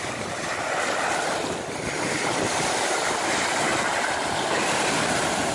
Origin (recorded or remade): recorded